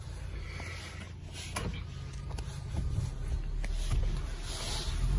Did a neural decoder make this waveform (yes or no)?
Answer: no